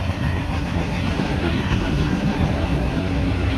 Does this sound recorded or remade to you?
remade